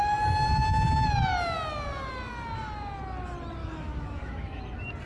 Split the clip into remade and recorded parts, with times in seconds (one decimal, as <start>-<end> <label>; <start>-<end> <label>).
0.0-3.6 recorded; 3.6-4.6 remade; 4.6-5.1 recorded